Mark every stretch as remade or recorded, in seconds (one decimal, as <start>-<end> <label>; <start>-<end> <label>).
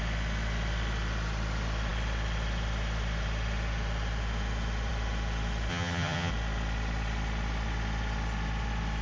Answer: 0.0-5.7 recorded; 5.7-6.3 remade; 6.3-9.0 recorded